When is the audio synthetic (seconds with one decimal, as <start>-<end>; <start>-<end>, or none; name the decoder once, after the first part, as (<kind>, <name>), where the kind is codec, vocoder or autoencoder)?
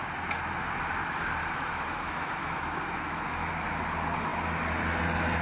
1.4-3.5 (autoencoder, DAC-VAE)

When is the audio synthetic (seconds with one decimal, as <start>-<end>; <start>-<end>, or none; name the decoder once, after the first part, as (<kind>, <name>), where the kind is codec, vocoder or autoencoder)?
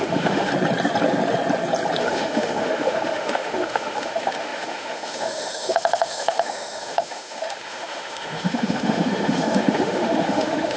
0.0-0.5 (autoencoder, DAC-VAE); 2.0-10.8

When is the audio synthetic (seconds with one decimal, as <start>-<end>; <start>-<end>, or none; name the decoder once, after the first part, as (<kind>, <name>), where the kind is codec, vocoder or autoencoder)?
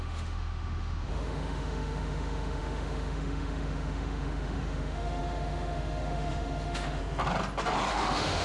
0.0-7.0 (autoencoder, DAC-VAE); 7.9-8.4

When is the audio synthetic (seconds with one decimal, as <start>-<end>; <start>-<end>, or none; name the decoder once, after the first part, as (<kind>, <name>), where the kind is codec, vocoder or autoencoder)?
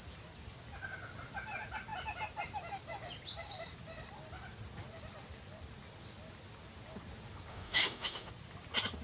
7.5-8.3 (autoencoder, DAC-VAE)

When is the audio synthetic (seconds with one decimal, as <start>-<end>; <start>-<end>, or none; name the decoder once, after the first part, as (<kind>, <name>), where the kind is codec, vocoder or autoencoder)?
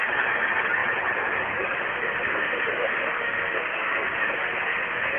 1.9-5.2 (autoencoder, DAC-VAE)